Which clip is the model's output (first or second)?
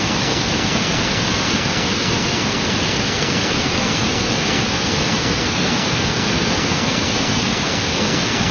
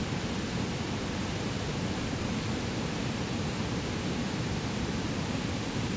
first